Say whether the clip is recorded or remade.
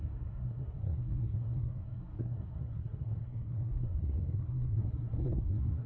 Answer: remade